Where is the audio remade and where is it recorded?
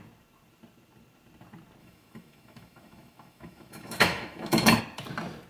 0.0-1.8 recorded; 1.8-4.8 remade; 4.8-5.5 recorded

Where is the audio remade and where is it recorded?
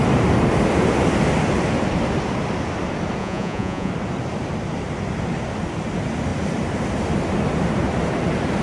0.0-3.2 recorded; 3.2-3.9 remade; 3.9-8.6 recorded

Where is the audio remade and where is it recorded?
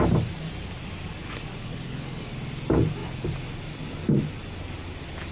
0.0-1.0 recorded; 1.0-2.3 remade; 2.3-5.3 recorded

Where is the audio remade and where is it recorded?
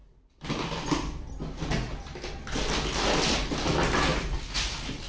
0.0-5.1 recorded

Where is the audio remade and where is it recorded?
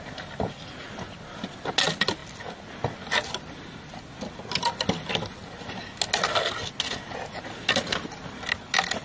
0.0-9.0 recorded